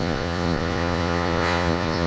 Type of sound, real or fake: fake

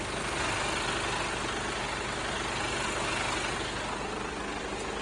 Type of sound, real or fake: real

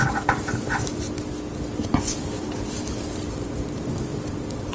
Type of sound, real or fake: real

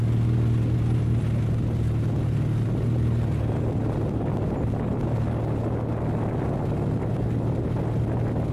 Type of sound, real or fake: real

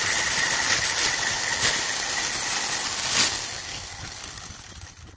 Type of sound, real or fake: real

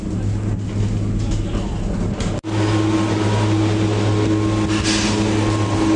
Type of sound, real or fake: real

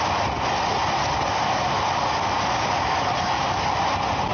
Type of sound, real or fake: real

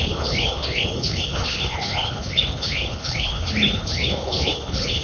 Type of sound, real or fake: fake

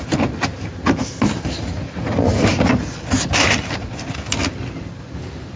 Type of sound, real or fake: real